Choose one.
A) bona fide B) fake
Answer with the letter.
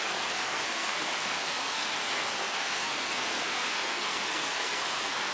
B